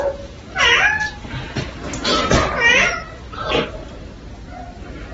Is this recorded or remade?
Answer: recorded